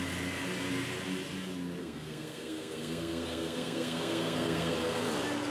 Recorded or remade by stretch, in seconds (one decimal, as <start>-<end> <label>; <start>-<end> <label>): 0.0-1.8 recorded; 1.8-5.1 remade; 5.1-5.5 recorded